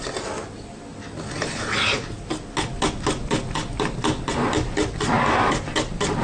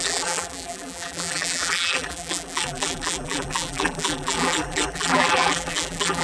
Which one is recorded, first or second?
first